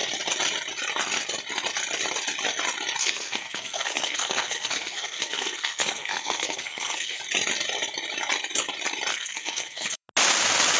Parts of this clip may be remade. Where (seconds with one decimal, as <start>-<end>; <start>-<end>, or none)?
3.0-7.2; 9.1-10.1